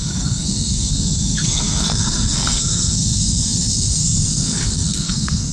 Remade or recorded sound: remade